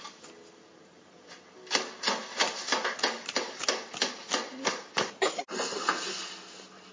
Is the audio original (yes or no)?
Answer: yes